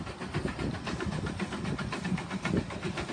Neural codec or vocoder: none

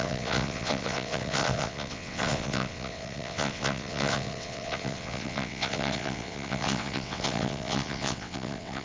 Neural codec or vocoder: vocoder, WaveNeXt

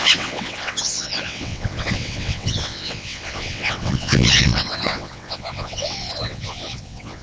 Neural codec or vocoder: vocoder, WaveNeXt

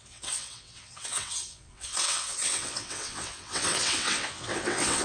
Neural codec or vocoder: vocoder, WaveNeXt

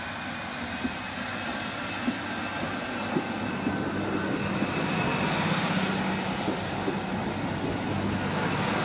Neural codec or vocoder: none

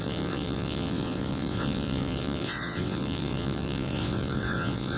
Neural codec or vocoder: vocoder, WaveNeXt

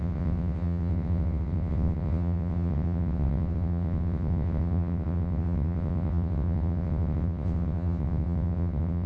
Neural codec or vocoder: vocoder, WaveNeXt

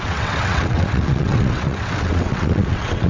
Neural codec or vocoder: vocoder, WaveNeXt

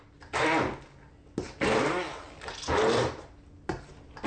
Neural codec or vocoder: none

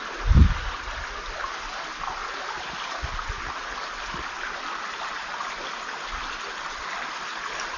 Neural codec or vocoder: none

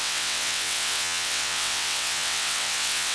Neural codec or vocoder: vocoder, WaveNeXt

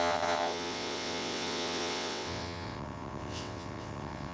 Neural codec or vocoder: vocoder, WaveNeXt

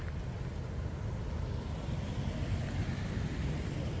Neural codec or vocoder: none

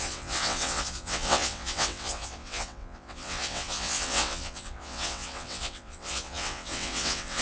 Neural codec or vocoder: vocoder, WaveNeXt